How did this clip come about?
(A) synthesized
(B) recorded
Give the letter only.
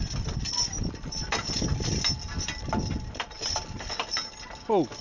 B